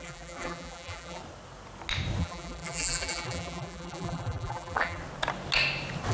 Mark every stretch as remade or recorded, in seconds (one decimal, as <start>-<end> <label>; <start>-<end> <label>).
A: 0.0-1.2 remade; 1.2-2.2 recorded; 2.2-5.0 remade; 5.0-6.1 recorded